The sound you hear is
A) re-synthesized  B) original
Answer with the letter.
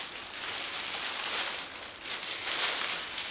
B